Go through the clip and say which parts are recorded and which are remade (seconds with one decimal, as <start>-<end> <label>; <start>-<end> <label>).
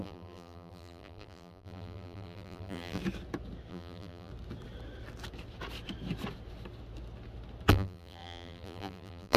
0.0-3.0 remade; 3.0-3.7 recorded; 3.7-4.3 remade; 4.3-7.7 recorded; 7.7-9.4 remade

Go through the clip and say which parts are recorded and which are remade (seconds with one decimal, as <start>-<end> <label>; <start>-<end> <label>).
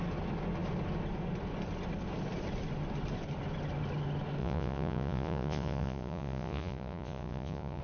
0.0-4.4 recorded; 4.4-7.8 remade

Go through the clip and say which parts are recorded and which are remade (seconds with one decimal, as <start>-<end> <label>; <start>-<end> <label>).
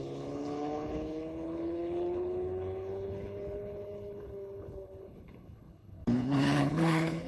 0.0-7.3 remade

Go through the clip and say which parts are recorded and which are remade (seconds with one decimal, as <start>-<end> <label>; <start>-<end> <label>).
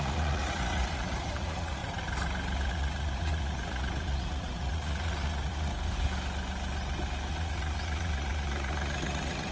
0.0-1.8 remade; 1.8-2.7 recorded; 2.7-5.7 remade; 5.7-7.3 recorded; 7.3-9.5 remade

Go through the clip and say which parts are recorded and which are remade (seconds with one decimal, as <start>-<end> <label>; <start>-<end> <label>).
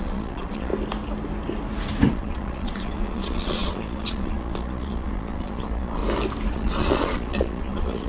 0.0-0.7 remade; 0.7-2.1 recorded; 2.1-6.0 remade; 6.0-6.5 recorded; 6.5-8.1 remade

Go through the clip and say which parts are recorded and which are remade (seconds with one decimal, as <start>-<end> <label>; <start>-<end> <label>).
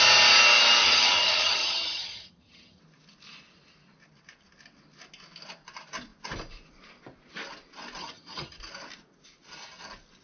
0.0-0.8 recorded; 0.8-2.8 remade; 2.8-8.0 recorded; 8.0-8.6 remade; 8.6-10.2 recorded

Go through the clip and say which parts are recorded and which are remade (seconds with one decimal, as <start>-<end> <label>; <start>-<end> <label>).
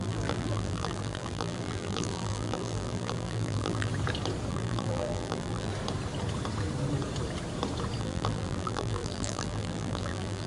0.0-3.9 remade; 3.9-4.5 recorded; 4.5-5.7 remade; 5.7-8.0 recorded; 8.0-10.5 remade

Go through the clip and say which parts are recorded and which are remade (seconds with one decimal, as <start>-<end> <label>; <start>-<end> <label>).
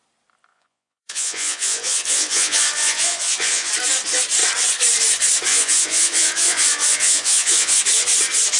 0.0-0.5 recorded; 0.5-3.7 remade; 3.7-5.5 recorded; 5.5-7.8 remade; 7.8-8.6 recorded